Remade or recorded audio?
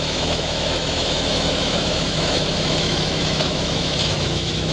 remade